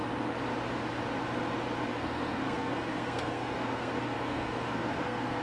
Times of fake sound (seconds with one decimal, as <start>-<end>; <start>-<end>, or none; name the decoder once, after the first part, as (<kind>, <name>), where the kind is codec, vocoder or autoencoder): 1.9-5.4 (codec, SNAC)